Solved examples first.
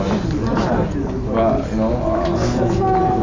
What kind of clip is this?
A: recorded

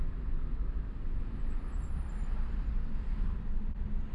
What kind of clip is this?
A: recorded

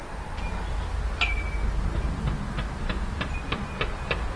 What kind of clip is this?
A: recorded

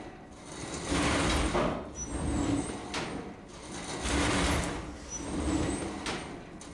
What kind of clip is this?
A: recorded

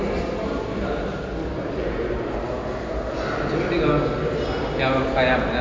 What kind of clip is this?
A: recorded